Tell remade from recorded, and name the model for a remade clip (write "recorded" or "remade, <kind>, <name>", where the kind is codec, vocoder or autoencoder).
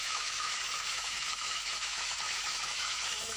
remade, autoencoder, DAC-VAE